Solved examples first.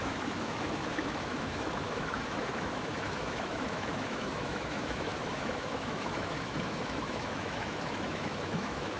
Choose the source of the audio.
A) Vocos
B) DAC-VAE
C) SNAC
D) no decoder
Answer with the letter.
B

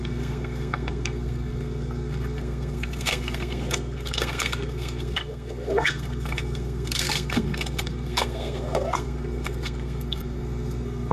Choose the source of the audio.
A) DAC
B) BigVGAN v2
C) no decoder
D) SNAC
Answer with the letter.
D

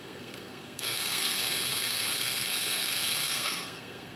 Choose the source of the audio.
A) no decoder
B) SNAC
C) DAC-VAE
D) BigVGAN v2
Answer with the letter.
B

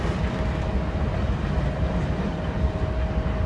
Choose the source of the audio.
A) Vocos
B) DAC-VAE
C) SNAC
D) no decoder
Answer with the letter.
D